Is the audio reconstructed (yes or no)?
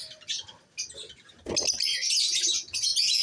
no